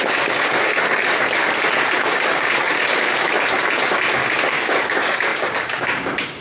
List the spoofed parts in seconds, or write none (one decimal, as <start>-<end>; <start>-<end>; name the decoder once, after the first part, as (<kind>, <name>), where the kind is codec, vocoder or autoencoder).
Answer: 0.0-1.0 (codec, DAC); 2.0-3.3; 4.2-6.4